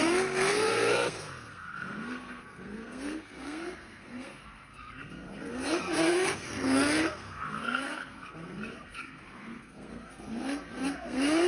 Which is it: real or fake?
fake